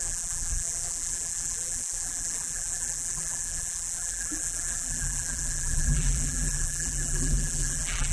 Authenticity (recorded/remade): remade